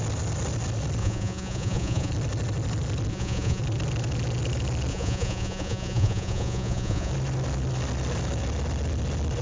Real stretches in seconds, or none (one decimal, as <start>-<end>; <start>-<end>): 0.0-1.0; 2.1-3.1; 3.6-4.9; 7.1-9.4